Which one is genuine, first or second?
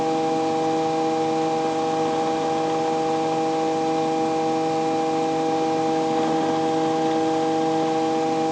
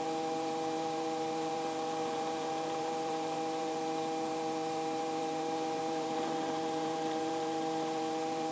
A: first